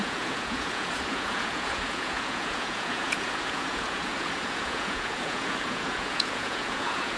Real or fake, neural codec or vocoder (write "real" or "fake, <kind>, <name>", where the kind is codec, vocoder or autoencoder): fake, vocoder, Vocos